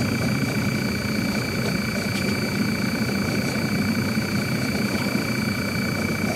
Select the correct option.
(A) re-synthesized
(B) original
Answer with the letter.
B